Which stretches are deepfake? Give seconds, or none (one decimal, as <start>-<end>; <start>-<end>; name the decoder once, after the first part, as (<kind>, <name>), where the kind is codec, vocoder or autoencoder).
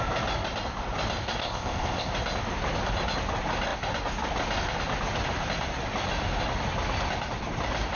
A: 1.4-2.1 (codec, ZipCodec)